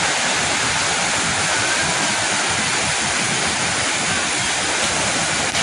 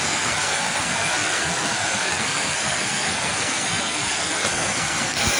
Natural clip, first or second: first